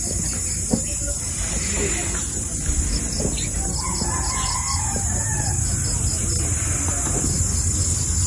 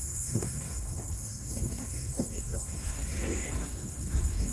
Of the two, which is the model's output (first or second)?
second